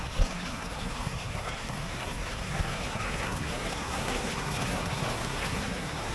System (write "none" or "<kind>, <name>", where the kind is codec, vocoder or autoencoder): codec, SNAC